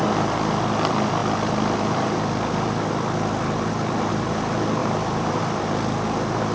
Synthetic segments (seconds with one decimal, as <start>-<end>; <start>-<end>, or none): 4.8-5.4